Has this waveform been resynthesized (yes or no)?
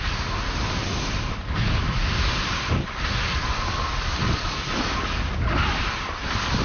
no